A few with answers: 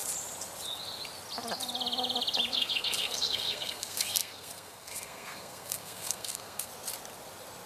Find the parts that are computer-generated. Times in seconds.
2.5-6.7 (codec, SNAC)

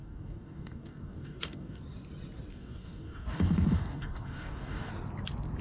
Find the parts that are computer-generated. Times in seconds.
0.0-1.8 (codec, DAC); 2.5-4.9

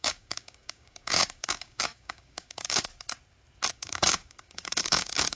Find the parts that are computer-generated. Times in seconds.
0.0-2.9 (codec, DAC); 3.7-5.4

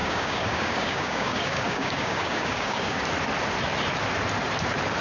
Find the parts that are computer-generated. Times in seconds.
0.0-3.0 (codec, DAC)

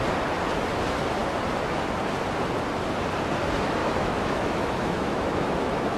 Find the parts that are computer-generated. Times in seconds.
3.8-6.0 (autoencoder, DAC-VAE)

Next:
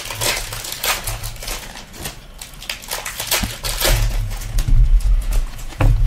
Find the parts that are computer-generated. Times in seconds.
3.8-6.1 (vocoder, Vocos)

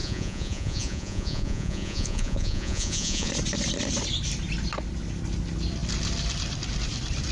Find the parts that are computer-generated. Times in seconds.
0.0-3.3 (vocoder, Vocos)